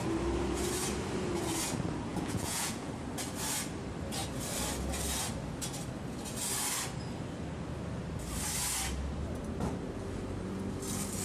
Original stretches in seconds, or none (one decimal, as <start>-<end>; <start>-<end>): 0.0-2.1; 2.9-11.2